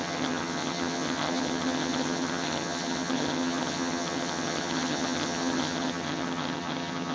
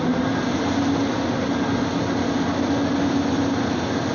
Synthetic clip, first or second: first